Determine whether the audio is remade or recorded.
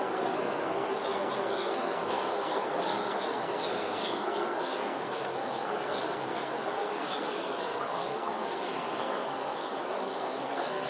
remade